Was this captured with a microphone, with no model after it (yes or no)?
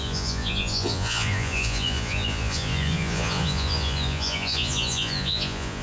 no